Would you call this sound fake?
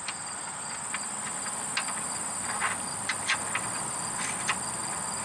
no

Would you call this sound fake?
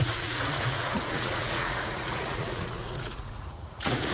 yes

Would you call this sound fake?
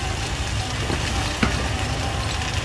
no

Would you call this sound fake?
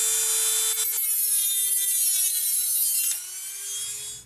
no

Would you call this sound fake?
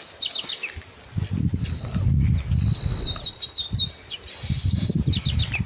no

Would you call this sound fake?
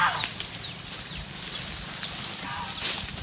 no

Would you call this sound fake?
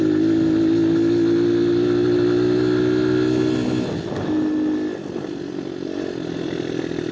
no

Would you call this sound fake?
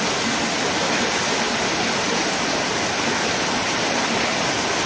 no